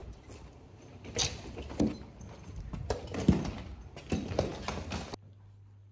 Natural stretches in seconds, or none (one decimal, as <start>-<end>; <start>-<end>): 0.0-5.9